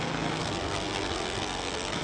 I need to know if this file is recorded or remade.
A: remade